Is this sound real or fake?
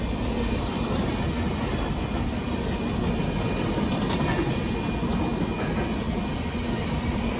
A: real